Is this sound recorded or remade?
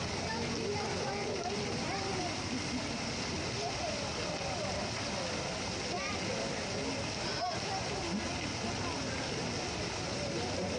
recorded